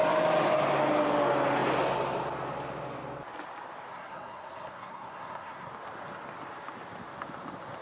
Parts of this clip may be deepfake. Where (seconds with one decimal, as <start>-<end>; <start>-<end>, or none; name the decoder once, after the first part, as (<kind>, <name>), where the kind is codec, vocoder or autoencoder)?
3.9-5.7 (codec, SNAC)